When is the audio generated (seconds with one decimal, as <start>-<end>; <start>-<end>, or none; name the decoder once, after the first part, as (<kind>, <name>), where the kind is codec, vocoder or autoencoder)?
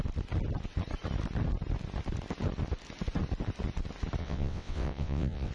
4.2-5.5 (vocoder, WaveNeXt)